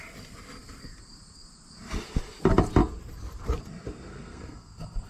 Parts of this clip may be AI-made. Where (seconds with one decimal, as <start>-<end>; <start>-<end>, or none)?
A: 4.1-5.1